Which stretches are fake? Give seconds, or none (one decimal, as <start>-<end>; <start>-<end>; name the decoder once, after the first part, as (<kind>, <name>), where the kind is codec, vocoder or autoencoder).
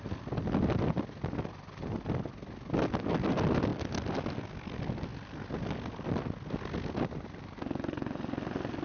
none